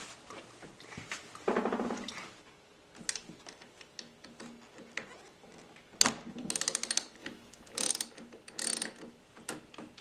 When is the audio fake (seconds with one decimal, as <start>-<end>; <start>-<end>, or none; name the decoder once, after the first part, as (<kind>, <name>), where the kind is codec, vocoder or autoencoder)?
7.2-7.9 (autoencoder, DAC-VAE)